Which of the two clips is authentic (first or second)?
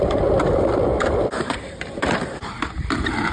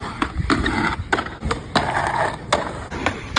second